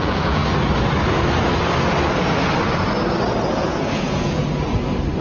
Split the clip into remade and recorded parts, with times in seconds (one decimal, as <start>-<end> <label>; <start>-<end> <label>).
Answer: 0.0-0.4 remade; 0.4-3.5 recorded; 3.5-4.4 remade; 4.4-5.2 recorded